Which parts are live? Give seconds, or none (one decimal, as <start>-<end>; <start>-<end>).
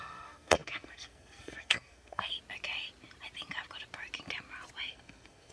2.3-4.9